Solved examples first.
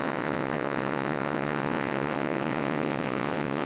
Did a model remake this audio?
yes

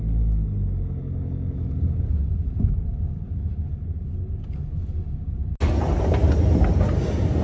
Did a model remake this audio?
no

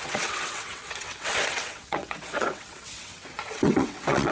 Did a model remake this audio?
yes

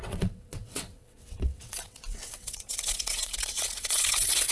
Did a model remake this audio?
yes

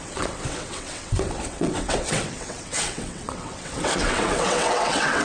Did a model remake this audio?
yes